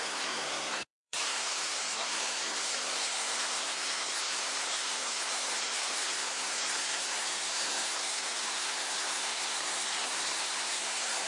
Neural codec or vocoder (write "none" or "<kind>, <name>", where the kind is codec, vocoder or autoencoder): codec, SNAC